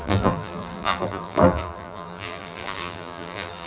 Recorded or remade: remade